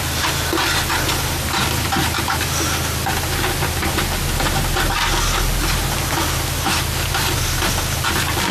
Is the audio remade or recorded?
recorded